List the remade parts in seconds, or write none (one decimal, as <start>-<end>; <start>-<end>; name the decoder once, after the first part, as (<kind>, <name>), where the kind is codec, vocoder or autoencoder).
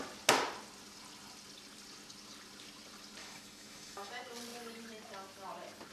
3.2-4.1 (autoencoder, DAC-VAE)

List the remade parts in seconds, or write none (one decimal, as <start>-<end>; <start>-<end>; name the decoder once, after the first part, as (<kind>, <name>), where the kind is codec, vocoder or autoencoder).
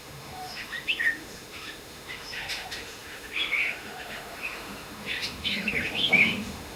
0.0-6.8 (autoencoder, DAC-VAE)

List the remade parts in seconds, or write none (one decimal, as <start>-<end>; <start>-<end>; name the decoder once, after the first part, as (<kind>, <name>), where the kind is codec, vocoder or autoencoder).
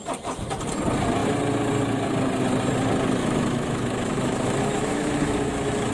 3.2-5.9 (autoencoder, DAC-VAE)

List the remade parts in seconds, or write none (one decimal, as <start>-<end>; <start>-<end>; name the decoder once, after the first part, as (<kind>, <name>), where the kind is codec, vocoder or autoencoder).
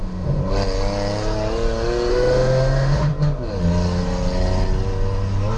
0.0-0.4 (autoencoder, DAC-VAE); 2.1-3.1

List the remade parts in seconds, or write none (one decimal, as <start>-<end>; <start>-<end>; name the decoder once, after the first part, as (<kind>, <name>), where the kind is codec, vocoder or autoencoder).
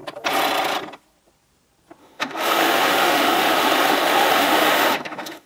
2.0-5.5 (autoencoder, DAC-VAE)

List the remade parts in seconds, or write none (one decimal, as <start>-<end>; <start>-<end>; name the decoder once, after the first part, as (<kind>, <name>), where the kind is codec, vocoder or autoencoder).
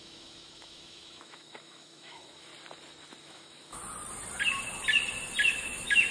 0.0-2.5 (autoencoder, DAC-VAE); 3.2-3.8; 5.5-6.1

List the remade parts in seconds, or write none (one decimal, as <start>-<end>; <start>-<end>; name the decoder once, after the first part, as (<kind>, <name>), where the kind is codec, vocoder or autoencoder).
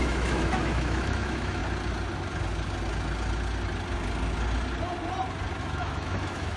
0.0-1.6 (autoencoder, DAC-VAE); 5.6-6.6